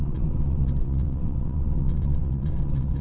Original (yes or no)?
no